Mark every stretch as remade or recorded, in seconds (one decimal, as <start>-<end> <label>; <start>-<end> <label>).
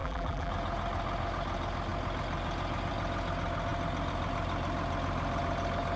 0.0-0.5 remade; 0.5-6.0 recorded